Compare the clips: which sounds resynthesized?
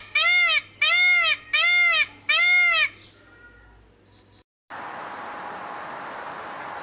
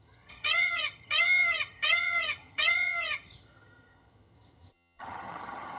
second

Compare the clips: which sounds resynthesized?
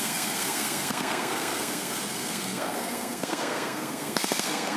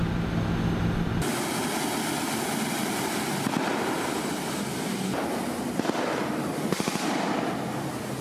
first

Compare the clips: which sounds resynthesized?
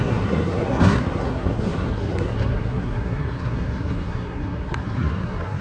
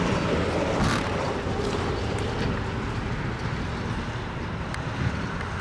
first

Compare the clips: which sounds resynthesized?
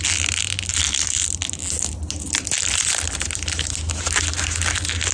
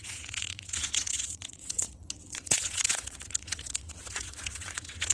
second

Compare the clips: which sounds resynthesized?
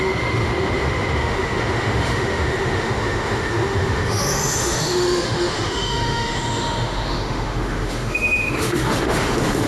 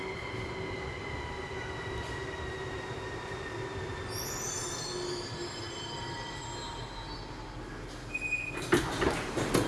first